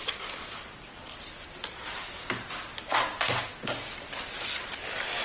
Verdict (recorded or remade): remade